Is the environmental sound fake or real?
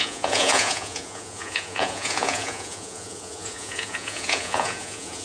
fake